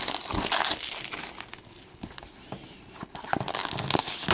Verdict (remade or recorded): recorded